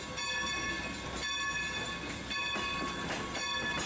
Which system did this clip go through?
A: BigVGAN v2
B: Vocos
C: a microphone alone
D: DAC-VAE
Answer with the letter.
C